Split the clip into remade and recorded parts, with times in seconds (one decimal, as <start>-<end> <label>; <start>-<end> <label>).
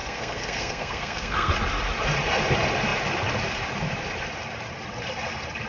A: 0.0-1.5 remade; 1.5-5.7 recorded